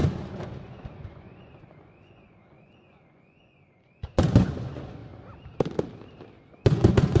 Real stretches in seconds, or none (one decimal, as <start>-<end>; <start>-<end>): 5.0-6.4